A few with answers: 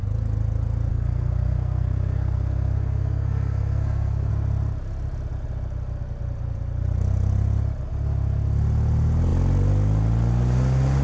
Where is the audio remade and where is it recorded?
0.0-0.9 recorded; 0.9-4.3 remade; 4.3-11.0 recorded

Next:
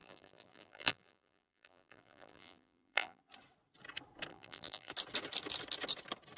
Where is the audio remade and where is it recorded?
0.0-3.2 remade; 3.2-4.3 recorded; 4.3-4.9 remade; 4.9-6.4 recorded

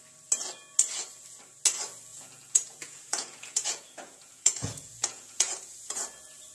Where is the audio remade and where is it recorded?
0.0-2.1 recorded; 2.1-6.0 remade; 6.0-6.5 recorded

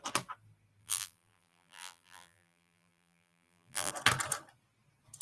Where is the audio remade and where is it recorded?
0.0-0.8 recorded; 0.8-3.9 remade; 3.9-5.2 recorded

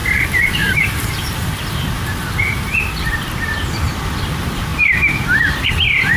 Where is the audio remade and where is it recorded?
0.0-6.2 remade

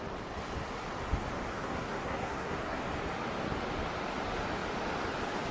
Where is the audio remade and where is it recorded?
0.0-1.5 recorded; 1.5-2.8 remade; 2.8-5.5 recorded

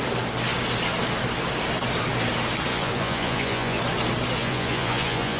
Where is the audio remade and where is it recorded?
0.0-2.7 recorded; 2.7-3.8 remade; 3.8-4.4 recorded; 4.4-5.4 remade